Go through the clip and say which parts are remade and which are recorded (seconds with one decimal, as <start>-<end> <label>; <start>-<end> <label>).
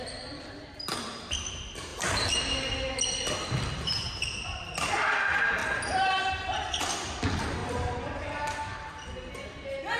0.0-10.0 recorded